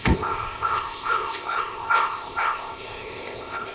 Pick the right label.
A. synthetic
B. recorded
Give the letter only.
A